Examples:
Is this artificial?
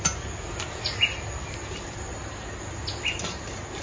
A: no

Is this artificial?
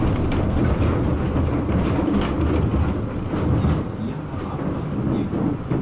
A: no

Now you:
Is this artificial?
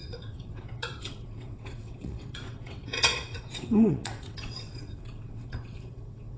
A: yes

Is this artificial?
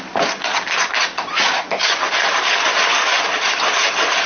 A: no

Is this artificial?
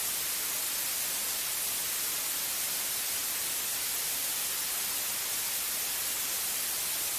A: no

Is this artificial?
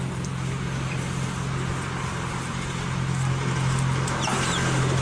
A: no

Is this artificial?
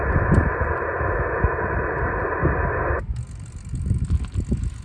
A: no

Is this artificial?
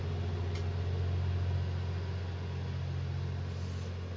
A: no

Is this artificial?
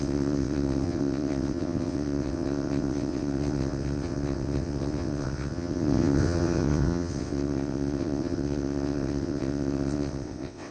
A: yes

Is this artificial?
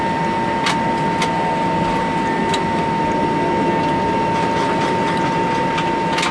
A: no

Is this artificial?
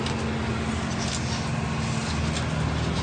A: no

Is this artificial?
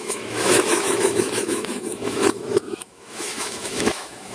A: yes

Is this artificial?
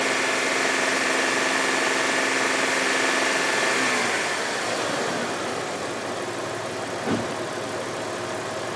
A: no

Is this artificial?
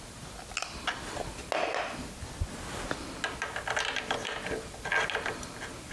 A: no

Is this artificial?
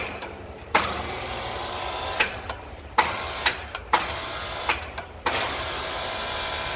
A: yes